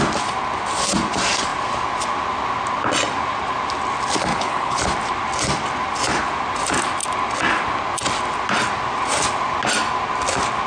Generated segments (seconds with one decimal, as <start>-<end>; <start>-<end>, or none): 4.3-4.8